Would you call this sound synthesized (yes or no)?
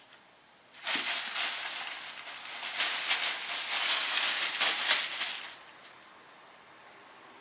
no